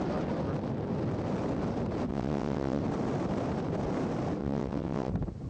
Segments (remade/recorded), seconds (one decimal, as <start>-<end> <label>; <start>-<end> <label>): 0.0-2.1 recorded; 2.1-2.8 remade; 2.8-4.4 recorded; 4.4-5.1 remade; 5.1-5.5 recorded